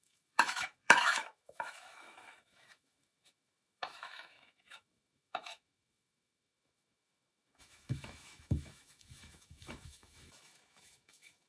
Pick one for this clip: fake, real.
fake